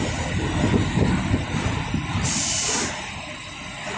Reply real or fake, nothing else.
real